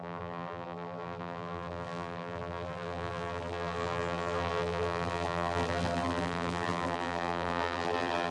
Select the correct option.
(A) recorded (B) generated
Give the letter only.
B